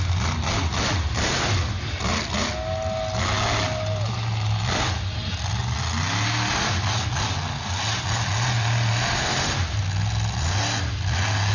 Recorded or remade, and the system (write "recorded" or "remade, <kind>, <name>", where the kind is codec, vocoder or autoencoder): recorded